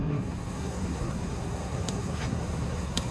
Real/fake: fake